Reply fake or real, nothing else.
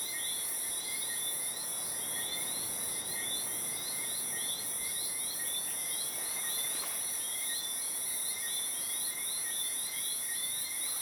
fake